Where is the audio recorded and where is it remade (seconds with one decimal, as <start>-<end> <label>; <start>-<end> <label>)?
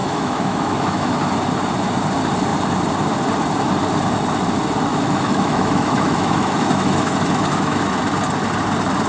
0.0-1.1 remade; 1.1-4.9 recorded; 4.9-7.9 remade; 7.9-9.1 recorded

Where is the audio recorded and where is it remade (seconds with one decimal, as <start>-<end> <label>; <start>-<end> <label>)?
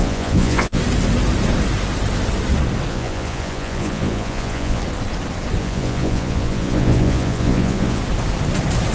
0.0-0.8 remade; 0.8-2.9 recorded; 2.9-4.8 remade; 4.8-5.6 recorded; 5.6-8.0 remade; 8.0-8.9 recorded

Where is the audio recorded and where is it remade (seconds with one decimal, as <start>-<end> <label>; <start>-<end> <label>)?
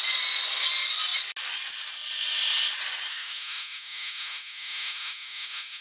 0.0-3.1 recorded; 3.1-5.8 remade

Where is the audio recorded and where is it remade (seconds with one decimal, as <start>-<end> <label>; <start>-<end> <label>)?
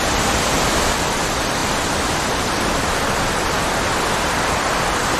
0.0-5.2 recorded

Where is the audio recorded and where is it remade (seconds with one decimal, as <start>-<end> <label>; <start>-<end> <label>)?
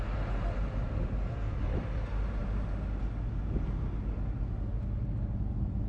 0.0-5.9 recorded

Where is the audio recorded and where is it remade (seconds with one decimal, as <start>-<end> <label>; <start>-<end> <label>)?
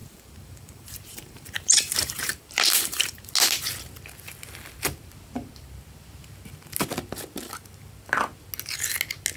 0.0-3.3 remade; 3.3-9.4 recorded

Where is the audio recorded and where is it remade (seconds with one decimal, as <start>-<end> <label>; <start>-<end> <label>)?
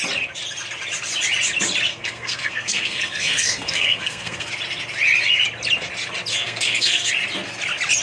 0.0-1.9 recorded; 1.9-4.5 remade; 4.5-6.3 recorded; 6.3-7.1 remade; 7.1-8.0 recorded